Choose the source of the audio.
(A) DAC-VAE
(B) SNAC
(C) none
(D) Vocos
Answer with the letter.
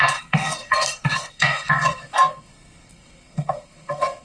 B